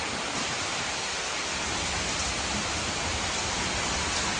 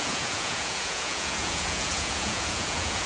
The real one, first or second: first